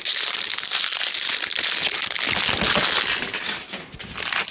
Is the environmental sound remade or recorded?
recorded